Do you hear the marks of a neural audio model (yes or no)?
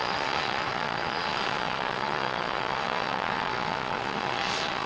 yes